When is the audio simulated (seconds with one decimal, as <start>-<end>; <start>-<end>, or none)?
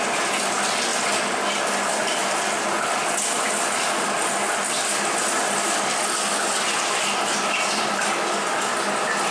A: none